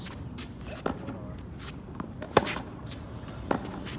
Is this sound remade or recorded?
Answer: recorded